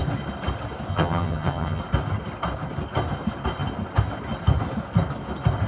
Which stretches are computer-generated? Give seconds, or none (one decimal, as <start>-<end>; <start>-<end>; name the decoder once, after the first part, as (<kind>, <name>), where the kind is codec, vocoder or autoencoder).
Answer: 0.9-1.8 (vocoder, HiFi-GAN)